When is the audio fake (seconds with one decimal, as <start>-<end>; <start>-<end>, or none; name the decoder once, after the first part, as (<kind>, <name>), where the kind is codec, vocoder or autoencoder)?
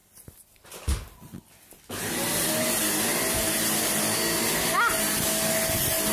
none